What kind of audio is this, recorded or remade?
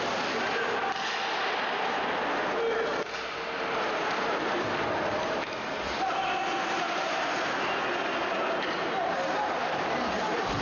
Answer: recorded